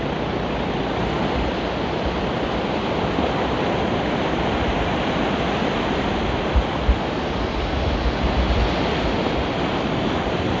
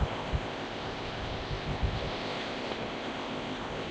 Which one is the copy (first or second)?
second